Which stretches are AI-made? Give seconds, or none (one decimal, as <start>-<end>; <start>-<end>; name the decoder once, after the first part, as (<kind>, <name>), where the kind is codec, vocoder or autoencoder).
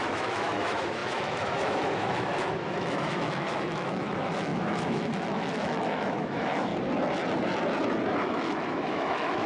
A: 0.0-6.7 (autoencoder, DAC-VAE); 8.2-9.5